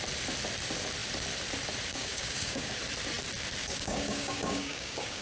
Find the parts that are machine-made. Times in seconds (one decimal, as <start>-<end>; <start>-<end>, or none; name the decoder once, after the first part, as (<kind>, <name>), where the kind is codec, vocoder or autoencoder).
1.9-2.7 (codec, DAC); 3.6-5.2